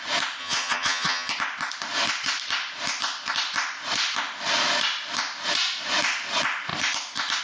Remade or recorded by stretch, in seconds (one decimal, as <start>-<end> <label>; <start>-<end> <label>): 0.0-0.4 recorded; 0.4-1.3 remade; 1.3-7.4 recorded